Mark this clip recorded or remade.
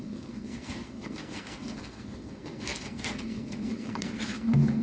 remade